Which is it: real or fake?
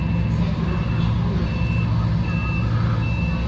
real